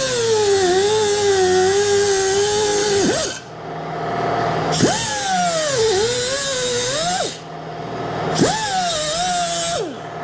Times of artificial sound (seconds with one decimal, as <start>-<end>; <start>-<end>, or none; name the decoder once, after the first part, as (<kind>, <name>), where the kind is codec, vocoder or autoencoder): none